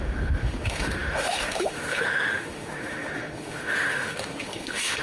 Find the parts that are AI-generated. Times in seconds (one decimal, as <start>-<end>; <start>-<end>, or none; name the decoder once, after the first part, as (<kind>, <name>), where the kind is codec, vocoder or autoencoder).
0.0-5.0 (autoencoder, DAC-VAE)